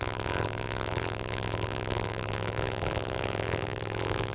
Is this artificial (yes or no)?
yes